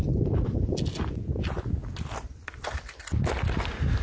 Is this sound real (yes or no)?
yes